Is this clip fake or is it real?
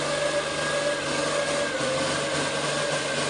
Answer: real